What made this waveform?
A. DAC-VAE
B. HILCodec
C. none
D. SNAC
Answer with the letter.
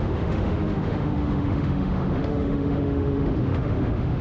A